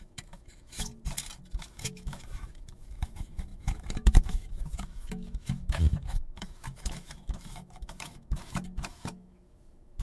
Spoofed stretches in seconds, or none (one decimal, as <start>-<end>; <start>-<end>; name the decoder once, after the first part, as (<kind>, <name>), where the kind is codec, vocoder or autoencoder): 0.0-0.9 (autoencoder, DAC-VAE); 1.6-10.0